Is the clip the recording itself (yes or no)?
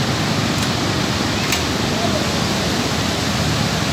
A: yes